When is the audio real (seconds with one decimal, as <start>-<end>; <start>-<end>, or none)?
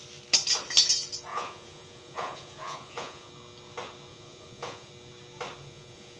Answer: 0.0-1.3; 3.3-4.1; 4.9-5.6